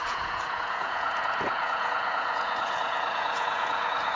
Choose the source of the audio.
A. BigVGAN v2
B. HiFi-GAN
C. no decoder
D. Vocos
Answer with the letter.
D